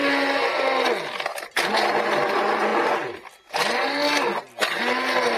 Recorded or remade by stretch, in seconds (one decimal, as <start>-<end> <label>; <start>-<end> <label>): 0.0-5.4 recorded